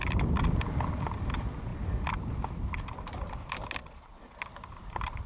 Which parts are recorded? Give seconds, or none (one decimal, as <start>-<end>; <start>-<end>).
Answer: 0.0-3.8; 4.4-5.3